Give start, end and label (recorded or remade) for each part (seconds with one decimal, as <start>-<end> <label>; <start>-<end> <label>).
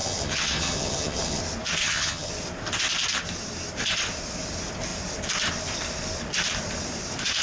0.0-1.4 remade; 1.4-1.8 recorded; 1.8-2.3 remade; 2.3-7.4 recorded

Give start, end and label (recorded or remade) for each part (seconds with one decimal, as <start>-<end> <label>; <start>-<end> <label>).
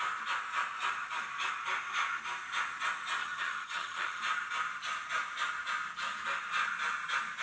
0.0-3.2 recorded; 3.2-4.2 remade; 4.2-7.4 recorded